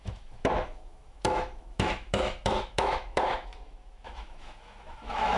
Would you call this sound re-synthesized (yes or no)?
yes